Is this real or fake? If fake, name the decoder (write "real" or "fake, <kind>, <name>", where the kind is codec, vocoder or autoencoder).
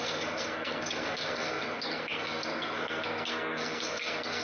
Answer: fake, codec, SNAC